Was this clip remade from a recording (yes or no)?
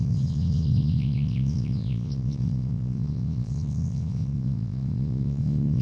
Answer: yes